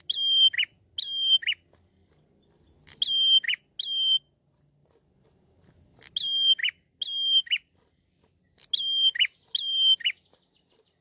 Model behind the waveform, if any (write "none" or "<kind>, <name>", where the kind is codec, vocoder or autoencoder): none